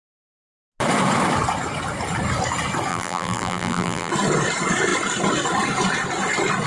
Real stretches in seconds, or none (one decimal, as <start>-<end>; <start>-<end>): 0.0-2.9; 4.1-6.7